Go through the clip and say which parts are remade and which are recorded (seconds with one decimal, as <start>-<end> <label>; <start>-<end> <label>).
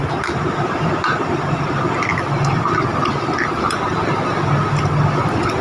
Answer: 0.0-5.6 recorded